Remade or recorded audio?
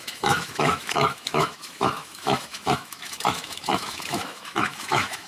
remade